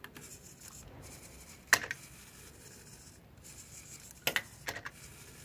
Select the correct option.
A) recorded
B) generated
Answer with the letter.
A